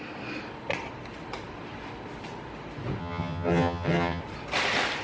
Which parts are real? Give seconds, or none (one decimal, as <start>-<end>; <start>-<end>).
0.0-3.0; 4.2-5.0